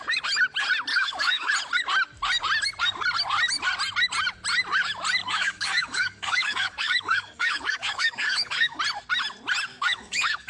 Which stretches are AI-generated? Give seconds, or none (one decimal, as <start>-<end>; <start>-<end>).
0.9-1.5; 5.2-8.8; 9.7-10.5